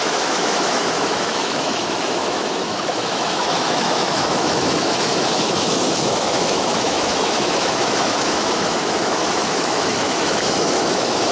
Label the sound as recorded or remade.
remade